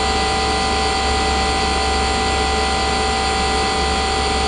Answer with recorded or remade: recorded